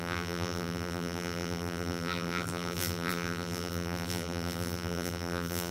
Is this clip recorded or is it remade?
remade